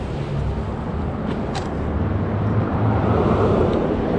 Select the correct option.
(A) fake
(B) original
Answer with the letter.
B